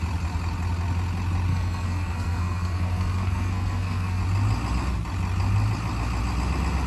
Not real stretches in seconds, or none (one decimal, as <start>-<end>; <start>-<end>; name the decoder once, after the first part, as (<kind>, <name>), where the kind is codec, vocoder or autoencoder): 1.5-4.2 (codec, SNAC)